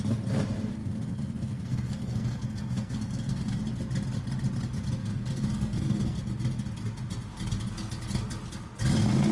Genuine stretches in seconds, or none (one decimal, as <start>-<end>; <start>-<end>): 0.0-0.8; 3.6-5.0; 6.2-9.3